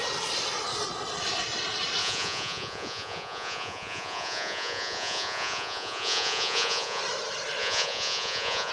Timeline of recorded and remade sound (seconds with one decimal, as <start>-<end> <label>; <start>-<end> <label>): 0.0-2.0 recorded; 2.0-7.0 remade; 7.0-7.6 recorded; 7.6-8.7 remade